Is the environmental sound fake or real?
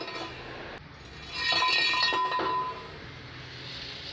real